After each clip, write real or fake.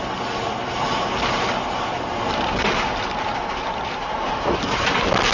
real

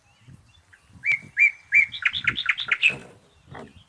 real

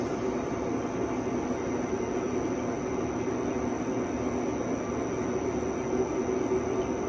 real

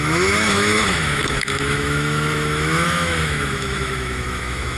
fake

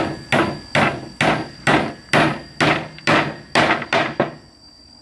real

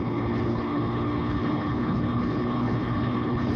fake